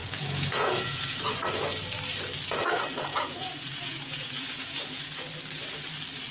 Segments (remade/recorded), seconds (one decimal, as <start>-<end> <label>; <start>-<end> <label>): 0.0-1.2 remade; 1.2-3.1 recorded; 3.1-5.2 remade; 5.2-6.3 recorded